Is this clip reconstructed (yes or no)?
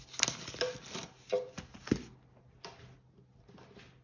no